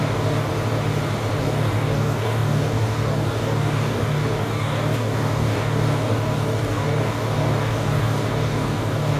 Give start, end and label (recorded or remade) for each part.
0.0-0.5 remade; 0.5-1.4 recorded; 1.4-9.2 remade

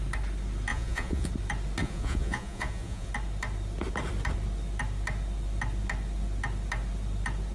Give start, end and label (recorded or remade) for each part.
0.0-0.7 recorded; 0.7-1.3 remade; 1.3-1.8 recorded; 1.8-3.1 remade; 3.1-7.5 recorded

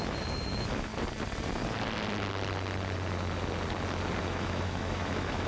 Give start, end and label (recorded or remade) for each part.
0.0-0.9 remade; 0.9-4.2 recorded; 4.2-5.5 remade

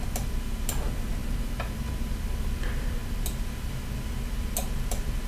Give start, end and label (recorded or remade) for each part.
0.0-5.3 recorded

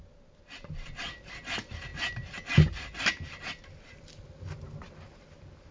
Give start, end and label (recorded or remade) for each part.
0.0-5.7 recorded